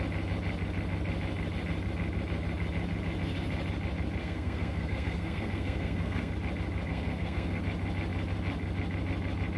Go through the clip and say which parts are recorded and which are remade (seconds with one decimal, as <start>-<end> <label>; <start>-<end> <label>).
0.0-4.2 recorded; 4.2-6.3 remade; 6.3-6.9 recorded; 6.9-7.6 remade; 7.6-9.6 recorded